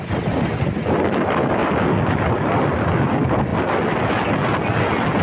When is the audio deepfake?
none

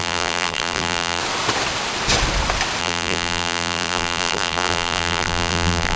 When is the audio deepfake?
0.0-1.2 (vocoder, BigVGAN v2); 2.8-6.0

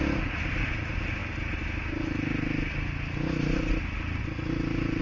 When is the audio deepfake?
none

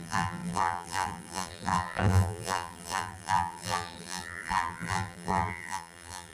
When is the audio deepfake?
0.0-6.3 (vocoder, BigVGAN v2)

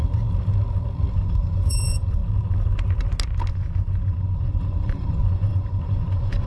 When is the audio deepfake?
1.1-2.2 (vocoder, Vocos); 3.5-6.5